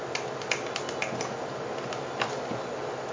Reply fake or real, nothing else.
real